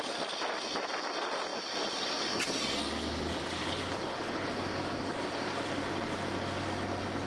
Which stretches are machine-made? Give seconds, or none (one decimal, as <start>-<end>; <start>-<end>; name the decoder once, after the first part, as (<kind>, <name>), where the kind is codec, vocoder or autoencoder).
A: 3.6-4.5 (codec, HILCodec)